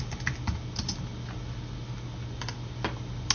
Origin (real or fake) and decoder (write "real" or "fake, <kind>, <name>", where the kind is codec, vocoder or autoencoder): real